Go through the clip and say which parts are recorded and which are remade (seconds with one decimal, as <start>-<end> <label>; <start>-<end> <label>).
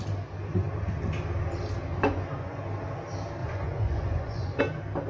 0.0-1.9 recorded; 1.9-2.6 remade; 2.6-3.4 recorded; 3.4-4.6 remade; 4.6-5.1 recorded